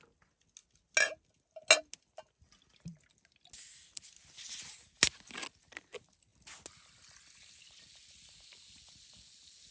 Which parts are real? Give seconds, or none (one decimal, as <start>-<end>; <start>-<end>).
0.0-9.7